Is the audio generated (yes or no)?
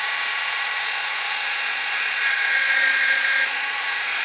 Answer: yes